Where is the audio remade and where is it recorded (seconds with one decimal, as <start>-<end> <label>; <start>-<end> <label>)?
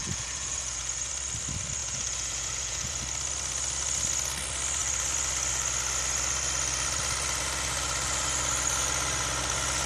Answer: 0.0-1.1 remade; 1.1-1.8 recorded; 1.8-3.0 remade; 3.0-9.9 recorded